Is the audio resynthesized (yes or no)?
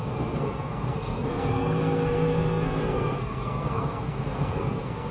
yes